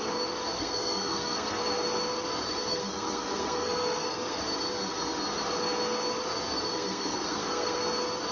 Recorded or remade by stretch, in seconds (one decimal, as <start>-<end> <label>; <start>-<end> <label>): 0.0-0.4 recorded; 0.4-1.6 remade; 1.6-2.7 recorded; 2.7-4.4 remade; 4.4-6.7 recorded; 6.7-7.8 remade; 7.8-8.3 recorded